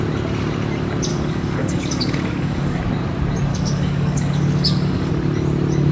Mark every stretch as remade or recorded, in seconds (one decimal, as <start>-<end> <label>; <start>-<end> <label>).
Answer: 0.0-1.1 recorded; 1.1-2.8 remade; 2.8-3.5 recorded; 3.5-5.1 remade; 5.1-5.9 recorded